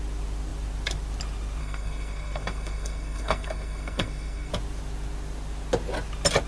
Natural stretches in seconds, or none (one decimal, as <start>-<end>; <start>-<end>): 0.0-1.6; 4.5-6.5